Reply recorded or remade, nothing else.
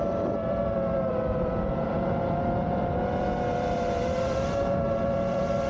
remade